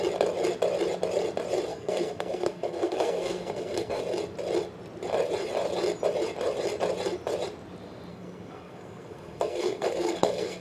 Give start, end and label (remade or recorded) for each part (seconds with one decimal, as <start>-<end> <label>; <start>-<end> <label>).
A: 0.0-1.7 recorded; 1.7-4.0 remade; 4.0-8.1 recorded; 8.1-10.6 remade